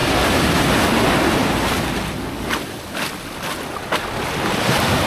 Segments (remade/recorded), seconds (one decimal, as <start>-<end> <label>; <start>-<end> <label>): 0.0-0.7 remade; 0.7-5.1 recorded

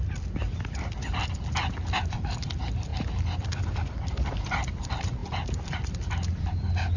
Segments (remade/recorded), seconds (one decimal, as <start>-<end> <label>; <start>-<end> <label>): 0.0-7.0 remade

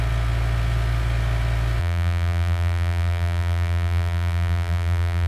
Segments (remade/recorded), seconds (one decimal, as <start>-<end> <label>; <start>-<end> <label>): 0.0-1.8 recorded; 1.8-5.3 remade

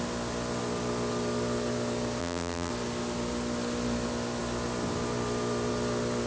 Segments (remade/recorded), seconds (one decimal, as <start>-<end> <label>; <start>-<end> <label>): 0.0-2.2 recorded; 2.2-2.7 remade; 2.7-6.3 recorded

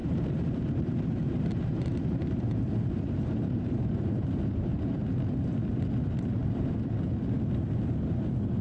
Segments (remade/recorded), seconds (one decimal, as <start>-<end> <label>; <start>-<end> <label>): 0.0-5.0 remade; 5.0-6.4 recorded; 6.4-6.9 remade; 6.9-8.6 recorded

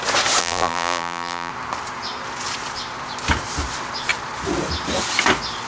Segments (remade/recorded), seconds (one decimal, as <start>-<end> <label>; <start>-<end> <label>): 0.0-0.4 recorded; 0.4-1.5 remade; 1.5-5.7 recorded